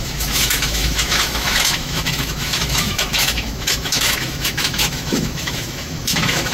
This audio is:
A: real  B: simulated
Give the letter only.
B